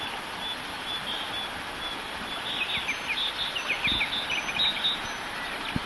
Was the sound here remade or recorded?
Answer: recorded